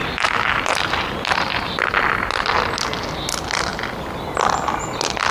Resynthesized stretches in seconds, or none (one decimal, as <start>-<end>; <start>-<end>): 0.0-2.6